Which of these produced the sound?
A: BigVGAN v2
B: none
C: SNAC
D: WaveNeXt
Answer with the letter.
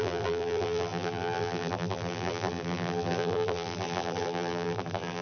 A